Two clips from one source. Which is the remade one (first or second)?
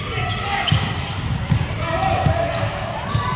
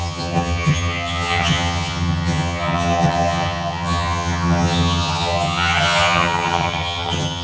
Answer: second